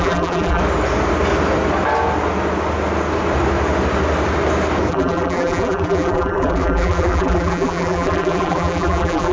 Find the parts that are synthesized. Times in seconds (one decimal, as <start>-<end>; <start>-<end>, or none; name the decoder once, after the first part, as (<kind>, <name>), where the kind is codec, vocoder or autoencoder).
0.0-0.6 (vocoder, BigVGAN v2); 4.9-9.3